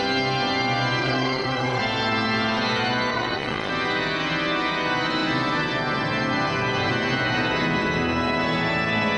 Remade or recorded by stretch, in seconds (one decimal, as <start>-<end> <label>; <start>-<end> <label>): 0.0-1.0 recorded; 1.0-1.8 remade; 1.8-3.1 recorded; 3.1-3.7 remade; 3.7-9.2 recorded